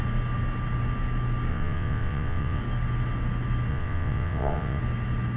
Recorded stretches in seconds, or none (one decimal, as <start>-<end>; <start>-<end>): 0.0-1.5; 2.6-3.7; 4.8-5.4